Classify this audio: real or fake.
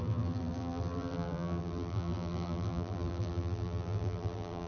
fake